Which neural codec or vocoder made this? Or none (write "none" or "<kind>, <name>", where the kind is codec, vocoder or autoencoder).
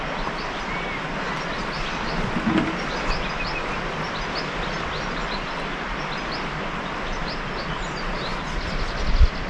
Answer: none